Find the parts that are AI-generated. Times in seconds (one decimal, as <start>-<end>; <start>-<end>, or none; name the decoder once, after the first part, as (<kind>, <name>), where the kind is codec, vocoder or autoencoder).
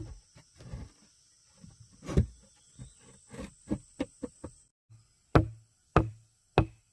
none